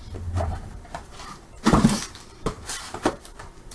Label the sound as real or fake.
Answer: fake